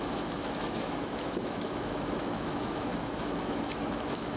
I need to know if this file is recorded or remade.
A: remade